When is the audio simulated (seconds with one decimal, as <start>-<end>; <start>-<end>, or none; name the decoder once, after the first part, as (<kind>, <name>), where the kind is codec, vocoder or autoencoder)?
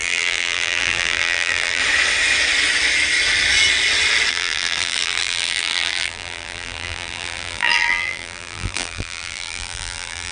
0.0-1.8 (vocoder, BigVGAN v2); 4.3-10.3